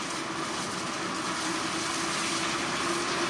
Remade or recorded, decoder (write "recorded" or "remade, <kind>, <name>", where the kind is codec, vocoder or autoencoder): recorded